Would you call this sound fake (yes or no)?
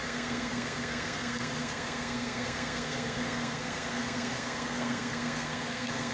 yes